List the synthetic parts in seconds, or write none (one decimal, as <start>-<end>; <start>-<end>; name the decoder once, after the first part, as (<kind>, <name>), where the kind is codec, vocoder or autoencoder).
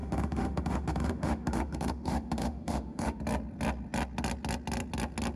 0.0-3.2 (autoencoder, DAC-VAE)